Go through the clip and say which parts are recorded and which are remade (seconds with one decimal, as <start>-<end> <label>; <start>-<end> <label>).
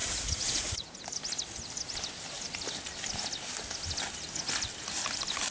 0.0-1.0 remade; 1.0-5.5 recorded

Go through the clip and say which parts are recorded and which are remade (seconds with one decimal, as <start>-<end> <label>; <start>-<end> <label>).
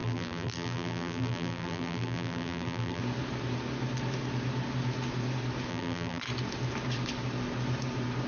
0.0-3.0 remade; 3.0-5.7 recorded; 5.7-6.2 remade; 6.2-8.3 recorded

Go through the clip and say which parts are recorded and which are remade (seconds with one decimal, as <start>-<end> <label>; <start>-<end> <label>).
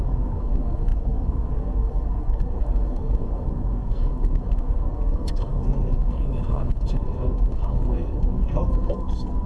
0.0-9.5 remade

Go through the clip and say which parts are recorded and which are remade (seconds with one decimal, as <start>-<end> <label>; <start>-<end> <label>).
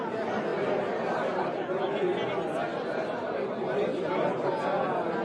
0.0-0.5 recorded; 0.5-1.8 remade; 1.8-2.7 recorded; 2.7-4.1 remade; 4.1-5.2 recorded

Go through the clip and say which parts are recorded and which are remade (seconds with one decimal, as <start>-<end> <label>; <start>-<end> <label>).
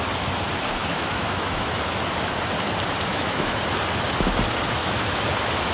0.0-0.8 recorded; 0.8-2.0 remade; 2.0-3.1 recorded; 3.1-3.6 remade; 3.6-4.8 recorded; 4.8-5.3 remade; 5.3-5.7 recorded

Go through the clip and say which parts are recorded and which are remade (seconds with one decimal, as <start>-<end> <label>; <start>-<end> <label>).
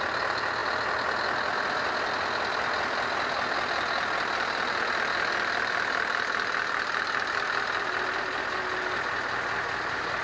0.0-10.2 recorded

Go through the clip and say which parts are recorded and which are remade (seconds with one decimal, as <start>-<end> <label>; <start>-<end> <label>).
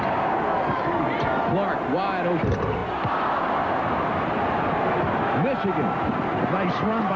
0.0-7.2 recorded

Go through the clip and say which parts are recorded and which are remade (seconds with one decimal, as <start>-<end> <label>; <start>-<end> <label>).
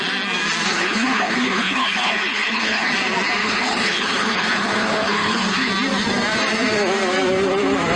0.0-0.7 recorded; 0.7-2.9 remade; 2.9-3.4 recorded; 3.4-5.7 remade; 5.7-8.0 recorded